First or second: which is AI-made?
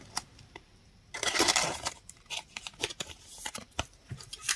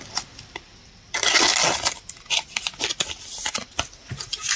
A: first